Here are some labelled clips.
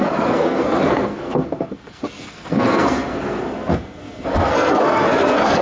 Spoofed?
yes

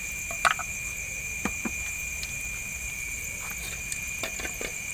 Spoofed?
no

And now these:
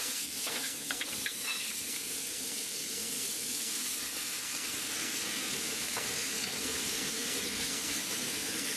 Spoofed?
yes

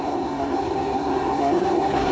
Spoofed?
yes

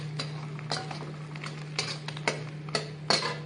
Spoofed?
no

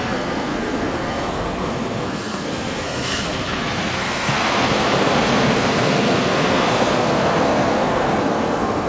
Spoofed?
yes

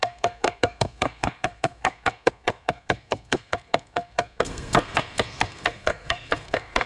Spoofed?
yes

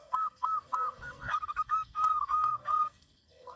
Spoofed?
yes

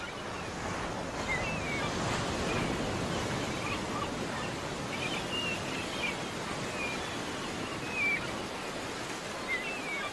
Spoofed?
no